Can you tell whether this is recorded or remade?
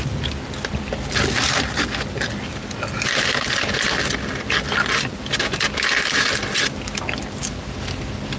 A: recorded